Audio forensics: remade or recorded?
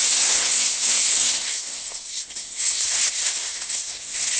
remade